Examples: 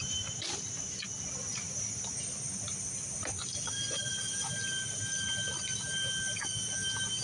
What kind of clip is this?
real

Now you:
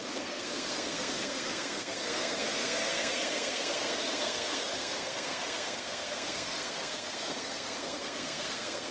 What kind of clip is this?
fake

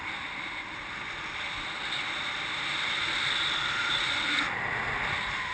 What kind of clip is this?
real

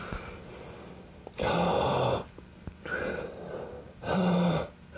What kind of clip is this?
real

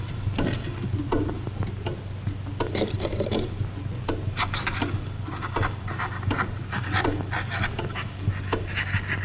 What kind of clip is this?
real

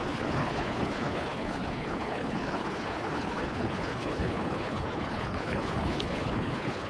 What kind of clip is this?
fake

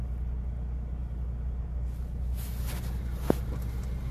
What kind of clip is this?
real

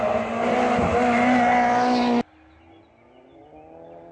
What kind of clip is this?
real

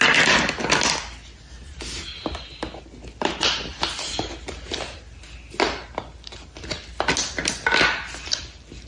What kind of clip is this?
real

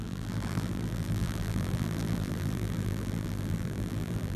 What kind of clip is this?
fake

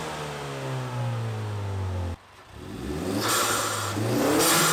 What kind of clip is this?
real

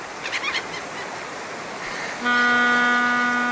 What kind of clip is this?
real